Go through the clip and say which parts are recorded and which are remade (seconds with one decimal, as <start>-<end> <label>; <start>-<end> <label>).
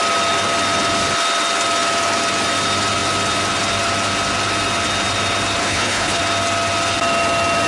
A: 0.0-5.6 recorded; 5.6-6.2 remade; 6.2-7.7 recorded